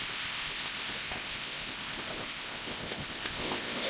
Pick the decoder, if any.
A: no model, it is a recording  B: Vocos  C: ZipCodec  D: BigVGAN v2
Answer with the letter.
C